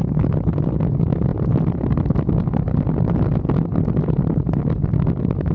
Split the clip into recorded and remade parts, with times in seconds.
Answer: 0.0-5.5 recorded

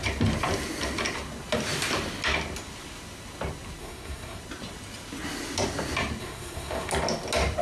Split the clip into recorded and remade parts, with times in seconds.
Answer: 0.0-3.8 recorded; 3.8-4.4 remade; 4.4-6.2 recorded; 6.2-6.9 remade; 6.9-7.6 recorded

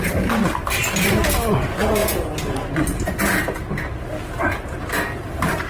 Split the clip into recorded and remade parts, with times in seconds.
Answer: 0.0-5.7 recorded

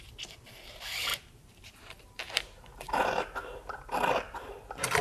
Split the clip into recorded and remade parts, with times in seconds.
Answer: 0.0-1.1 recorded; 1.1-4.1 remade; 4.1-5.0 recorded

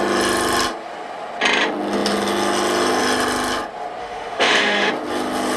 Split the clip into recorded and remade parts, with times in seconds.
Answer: 0.0-4.0 recorded; 4.0-4.9 remade; 4.9-5.6 recorded